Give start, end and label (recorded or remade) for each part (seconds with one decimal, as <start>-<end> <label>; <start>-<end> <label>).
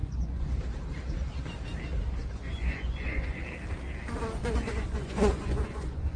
0.0-0.5 remade; 0.5-2.2 recorded; 2.2-3.4 remade; 3.4-4.4 recorded; 4.4-6.2 remade